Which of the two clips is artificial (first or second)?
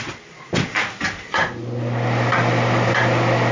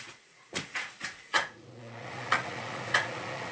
second